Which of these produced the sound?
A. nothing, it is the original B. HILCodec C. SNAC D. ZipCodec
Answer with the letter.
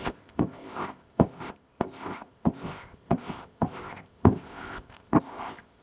D